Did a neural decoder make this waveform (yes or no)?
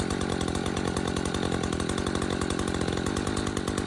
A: no